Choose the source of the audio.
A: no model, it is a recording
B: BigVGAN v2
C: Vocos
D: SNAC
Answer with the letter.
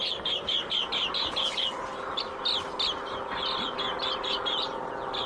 A